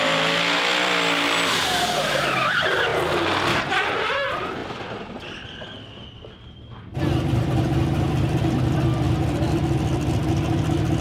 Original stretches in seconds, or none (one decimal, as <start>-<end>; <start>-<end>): 0.0-11.0